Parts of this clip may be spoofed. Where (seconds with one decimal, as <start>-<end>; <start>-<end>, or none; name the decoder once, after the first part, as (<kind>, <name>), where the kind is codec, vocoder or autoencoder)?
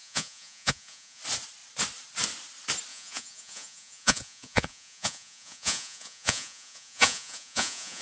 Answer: 0.0-1.2 (vocoder, Vocos); 2.9-8.0